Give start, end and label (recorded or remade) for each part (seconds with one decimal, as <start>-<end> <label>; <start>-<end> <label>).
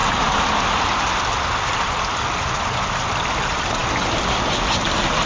0.0-5.3 recorded